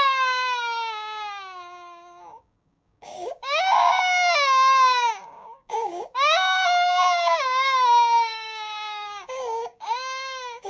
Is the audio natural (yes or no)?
no